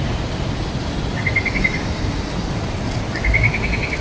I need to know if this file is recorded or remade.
recorded